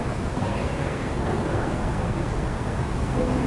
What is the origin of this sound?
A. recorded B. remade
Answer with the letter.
B